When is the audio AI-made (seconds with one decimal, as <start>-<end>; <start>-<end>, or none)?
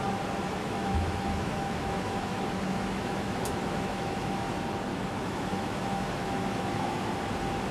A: 0.6-4.5; 4.9-7.1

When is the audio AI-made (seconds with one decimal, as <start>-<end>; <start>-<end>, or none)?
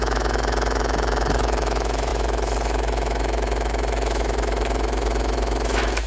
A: 0.0-6.1